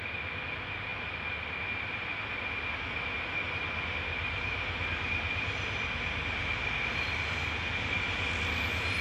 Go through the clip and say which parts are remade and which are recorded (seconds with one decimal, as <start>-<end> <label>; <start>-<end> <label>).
0.0-9.0 recorded

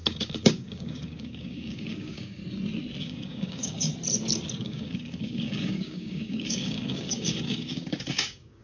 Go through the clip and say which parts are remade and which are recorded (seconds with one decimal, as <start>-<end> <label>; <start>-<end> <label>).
0.0-2.4 remade; 2.4-3.0 recorded; 3.0-3.9 remade; 3.9-4.6 recorded; 4.6-8.6 remade

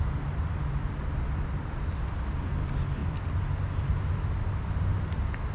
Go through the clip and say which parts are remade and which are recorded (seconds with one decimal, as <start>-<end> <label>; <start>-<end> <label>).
0.0-5.5 recorded